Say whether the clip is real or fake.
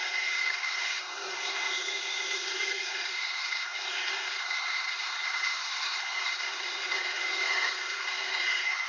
fake